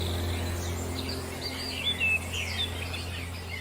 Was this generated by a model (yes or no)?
no